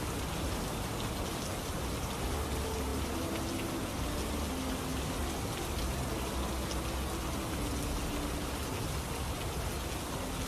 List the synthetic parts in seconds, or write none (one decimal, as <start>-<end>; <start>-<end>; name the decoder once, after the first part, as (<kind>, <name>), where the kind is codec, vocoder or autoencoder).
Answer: 2.9-3.7 (vocoder, BigVGAN v2); 4.9-6.1